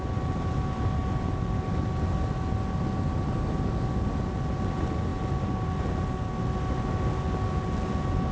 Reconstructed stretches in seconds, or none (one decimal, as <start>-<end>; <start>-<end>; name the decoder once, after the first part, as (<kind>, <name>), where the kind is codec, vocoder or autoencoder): none